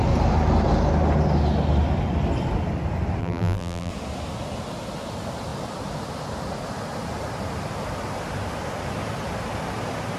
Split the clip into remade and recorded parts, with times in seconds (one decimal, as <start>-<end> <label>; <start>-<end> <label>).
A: 0.0-3.2 recorded; 3.2-3.9 remade; 3.9-10.2 recorded